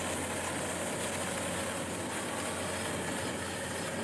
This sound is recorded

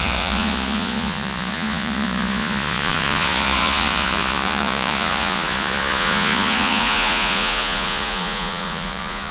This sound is remade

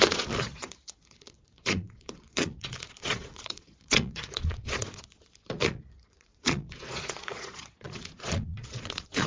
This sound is remade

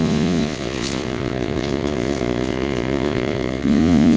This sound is remade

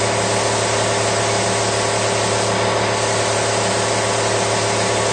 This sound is recorded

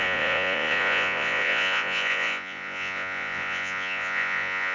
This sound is remade